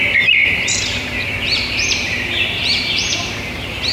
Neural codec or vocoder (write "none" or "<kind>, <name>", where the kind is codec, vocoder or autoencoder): vocoder, BigVGAN v2